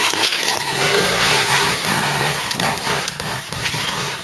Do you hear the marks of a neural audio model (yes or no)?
yes